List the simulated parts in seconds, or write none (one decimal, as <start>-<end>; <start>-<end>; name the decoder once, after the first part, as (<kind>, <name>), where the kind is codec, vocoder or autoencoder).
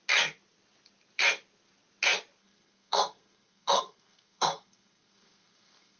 2.4-6.0 (codec, SNAC)